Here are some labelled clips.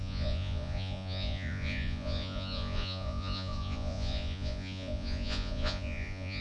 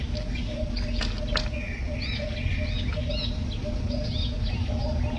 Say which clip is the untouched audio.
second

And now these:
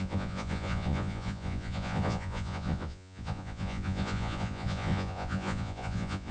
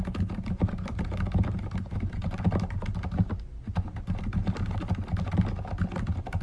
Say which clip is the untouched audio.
second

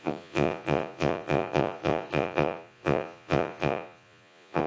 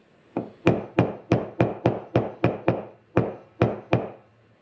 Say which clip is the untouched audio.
second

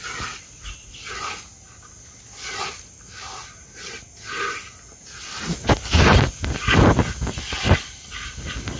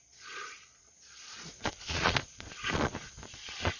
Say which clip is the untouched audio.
first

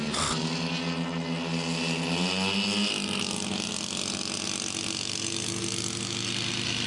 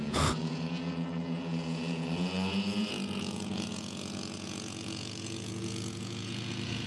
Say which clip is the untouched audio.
first